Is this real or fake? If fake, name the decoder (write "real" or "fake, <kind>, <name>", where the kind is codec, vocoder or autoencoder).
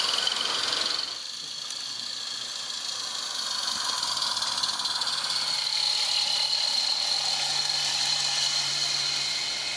real